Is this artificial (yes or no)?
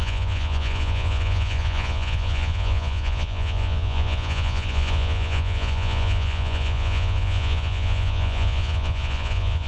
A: yes